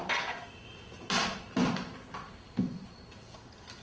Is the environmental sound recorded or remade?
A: recorded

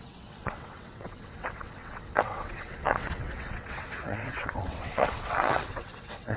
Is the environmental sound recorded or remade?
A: remade